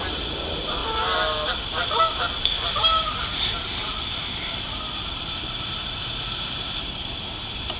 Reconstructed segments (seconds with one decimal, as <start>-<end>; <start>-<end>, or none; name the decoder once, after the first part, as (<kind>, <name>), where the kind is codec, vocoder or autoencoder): 0.0-0.8 (vocoder, BigVGAN v2); 2.7-3.9; 5.1-7.8